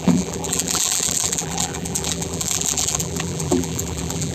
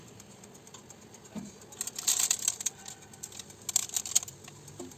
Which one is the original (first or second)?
second